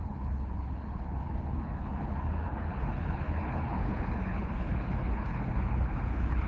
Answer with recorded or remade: remade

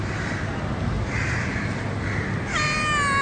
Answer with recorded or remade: recorded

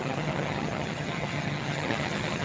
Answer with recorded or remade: remade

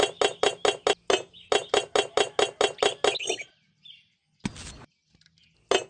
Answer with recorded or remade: recorded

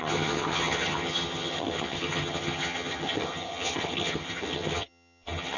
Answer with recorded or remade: remade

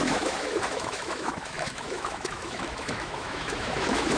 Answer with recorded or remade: remade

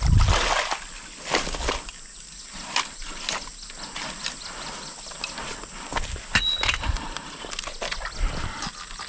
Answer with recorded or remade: recorded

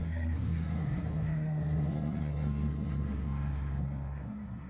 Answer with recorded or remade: remade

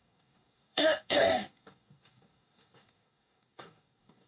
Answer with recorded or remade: remade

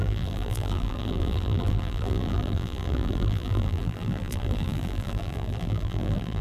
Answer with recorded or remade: remade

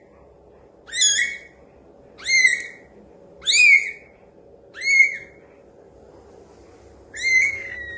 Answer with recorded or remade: recorded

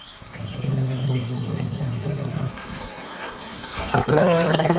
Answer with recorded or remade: remade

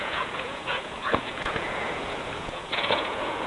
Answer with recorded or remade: remade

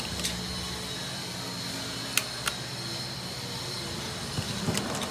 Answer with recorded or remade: recorded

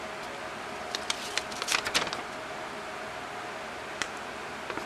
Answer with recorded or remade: recorded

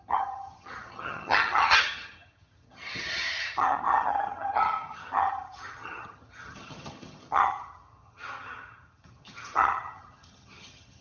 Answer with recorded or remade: remade